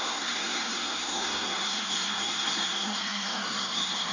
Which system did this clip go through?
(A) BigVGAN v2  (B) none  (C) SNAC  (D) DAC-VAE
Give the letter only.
C